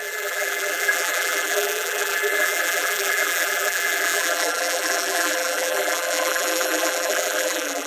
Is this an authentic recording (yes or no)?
no